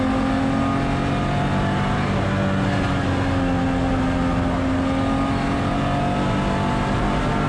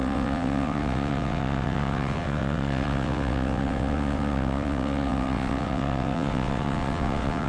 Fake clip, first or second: second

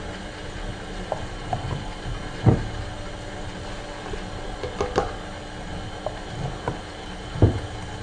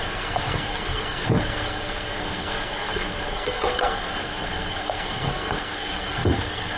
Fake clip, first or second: second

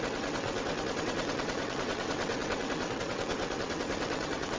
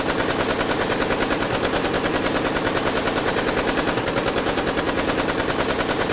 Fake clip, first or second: first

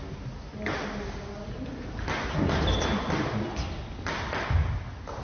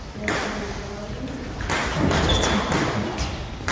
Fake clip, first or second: second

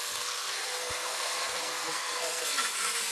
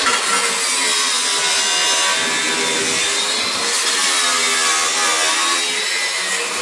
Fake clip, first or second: first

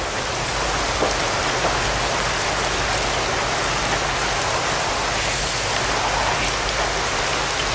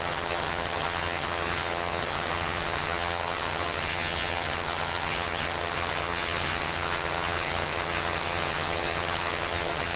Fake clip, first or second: second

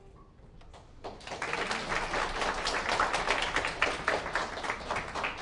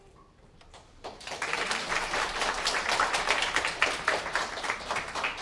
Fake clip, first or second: second